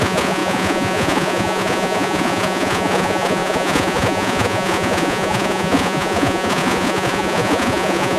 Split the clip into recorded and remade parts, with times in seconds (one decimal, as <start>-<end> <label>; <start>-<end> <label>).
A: 0.0-8.2 remade